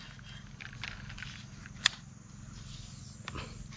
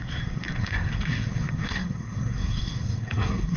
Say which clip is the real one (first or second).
first